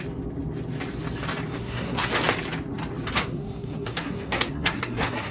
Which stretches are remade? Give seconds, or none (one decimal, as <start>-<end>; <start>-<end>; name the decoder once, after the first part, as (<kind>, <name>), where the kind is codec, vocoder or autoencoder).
1.5-2.1 (codec, SNAC); 3.2-5.3